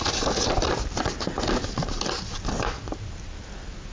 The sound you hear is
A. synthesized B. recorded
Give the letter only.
B